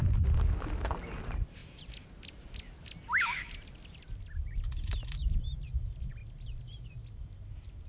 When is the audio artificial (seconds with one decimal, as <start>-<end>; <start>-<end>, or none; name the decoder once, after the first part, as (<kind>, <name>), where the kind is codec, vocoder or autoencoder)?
none